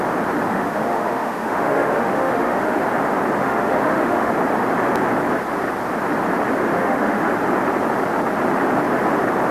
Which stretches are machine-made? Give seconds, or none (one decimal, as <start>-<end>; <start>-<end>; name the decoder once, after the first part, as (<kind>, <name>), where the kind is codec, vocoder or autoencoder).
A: 0.5-2.8 (autoencoder, DAC-VAE); 3.4-4.3; 6.7-7.3